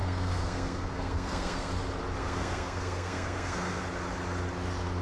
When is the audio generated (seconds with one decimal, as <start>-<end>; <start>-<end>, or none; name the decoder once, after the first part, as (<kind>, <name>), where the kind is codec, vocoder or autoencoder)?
0.0-1.7 (codec, SNAC); 2.2-3.8